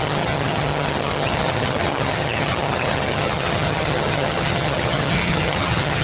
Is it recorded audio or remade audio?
remade